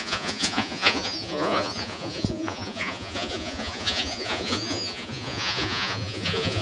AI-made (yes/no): yes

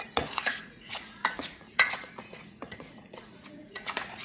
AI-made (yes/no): yes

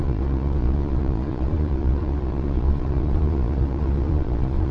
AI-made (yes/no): yes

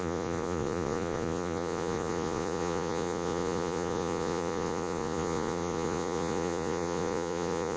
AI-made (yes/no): yes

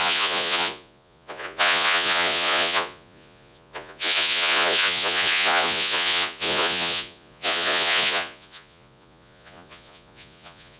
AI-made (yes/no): yes